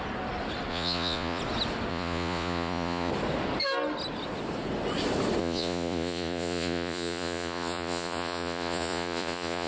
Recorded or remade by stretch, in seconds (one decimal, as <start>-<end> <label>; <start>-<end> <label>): 0.0-0.7 recorded; 0.7-1.4 remade; 1.4-1.9 recorded; 1.9-3.1 remade; 3.1-5.4 recorded; 5.4-9.7 remade